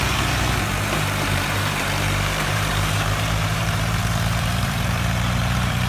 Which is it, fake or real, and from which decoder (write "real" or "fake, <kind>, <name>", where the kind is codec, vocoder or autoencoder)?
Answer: fake, vocoder, BigVGAN v2